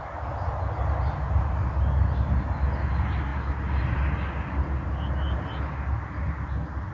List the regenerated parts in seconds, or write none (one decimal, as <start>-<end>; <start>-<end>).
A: none